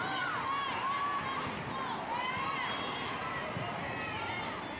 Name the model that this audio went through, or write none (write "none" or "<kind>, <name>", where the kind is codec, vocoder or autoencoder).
none